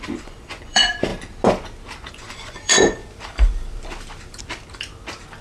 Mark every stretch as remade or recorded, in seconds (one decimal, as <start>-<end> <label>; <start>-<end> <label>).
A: 0.0-1.1 remade; 1.1-2.1 recorded; 2.1-3.0 remade; 3.0-5.4 recorded